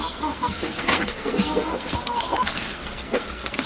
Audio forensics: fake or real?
fake